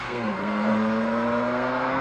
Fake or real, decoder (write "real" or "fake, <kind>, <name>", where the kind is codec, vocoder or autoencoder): fake, codec, SNAC